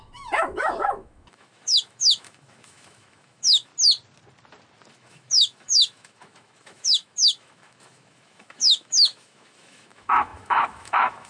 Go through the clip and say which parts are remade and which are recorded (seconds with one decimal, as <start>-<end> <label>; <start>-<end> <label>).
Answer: 0.0-3.7 remade; 3.7-4.9 recorded; 4.9-11.3 remade